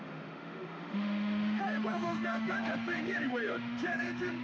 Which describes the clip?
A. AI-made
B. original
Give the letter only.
A